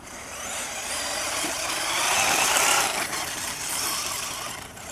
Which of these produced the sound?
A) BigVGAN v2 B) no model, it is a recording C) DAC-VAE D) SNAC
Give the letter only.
A